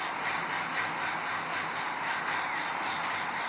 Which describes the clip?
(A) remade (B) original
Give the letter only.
B